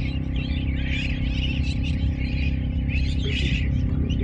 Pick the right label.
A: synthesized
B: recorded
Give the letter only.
A